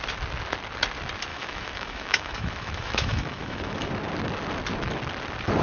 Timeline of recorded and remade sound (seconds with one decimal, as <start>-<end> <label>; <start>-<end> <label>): 0.0-1.3 recorded; 1.3-3.9 remade; 3.9-5.6 recorded